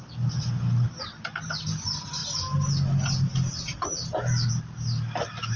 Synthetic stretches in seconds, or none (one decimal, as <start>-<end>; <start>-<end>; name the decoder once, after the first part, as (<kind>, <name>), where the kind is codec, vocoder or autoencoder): none